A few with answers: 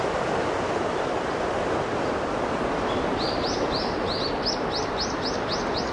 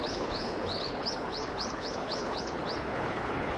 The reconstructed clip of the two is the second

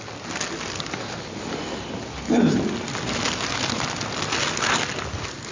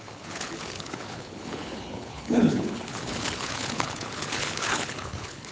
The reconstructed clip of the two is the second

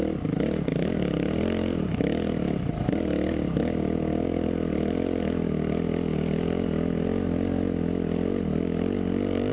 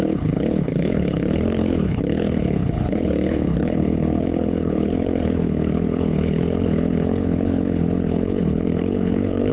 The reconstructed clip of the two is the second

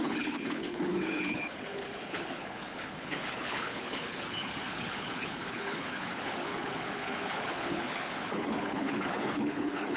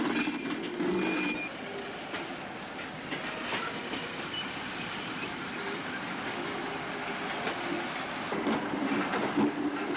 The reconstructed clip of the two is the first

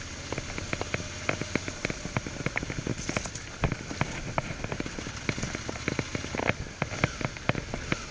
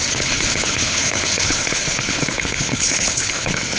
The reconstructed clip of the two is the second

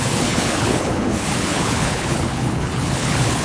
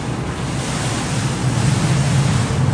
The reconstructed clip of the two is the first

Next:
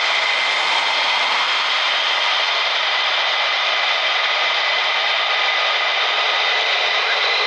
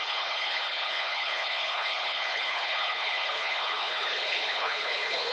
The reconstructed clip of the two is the second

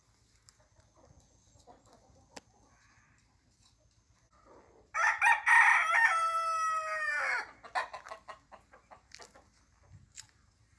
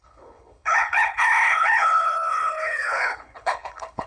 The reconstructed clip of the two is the second